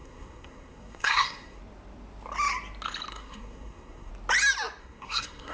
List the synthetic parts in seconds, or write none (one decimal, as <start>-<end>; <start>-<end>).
0.0-1.6; 3.1-4.1; 4.8-5.5